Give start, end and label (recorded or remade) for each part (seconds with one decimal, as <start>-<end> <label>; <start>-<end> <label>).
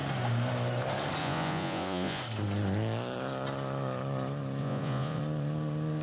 0.0-1.2 recorded; 1.2-2.2 remade; 2.2-4.6 recorded; 4.6-5.2 remade; 5.2-6.0 recorded